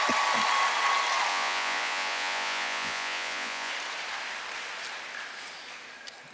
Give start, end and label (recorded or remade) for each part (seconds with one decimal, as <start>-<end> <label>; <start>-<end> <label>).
0.0-1.3 recorded; 1.3-3.7 remade; 3.7-6.3 recorded